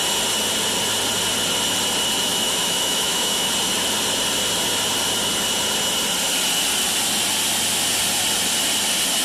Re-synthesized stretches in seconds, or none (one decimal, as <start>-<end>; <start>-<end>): 2.3-3.5